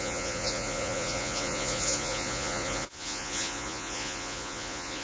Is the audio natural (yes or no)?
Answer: no